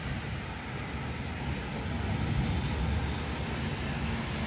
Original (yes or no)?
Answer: yes